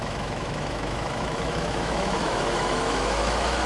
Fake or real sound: fake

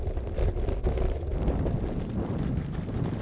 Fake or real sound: real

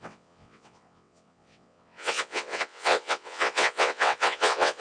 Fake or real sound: fake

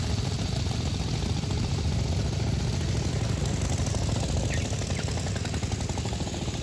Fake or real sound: real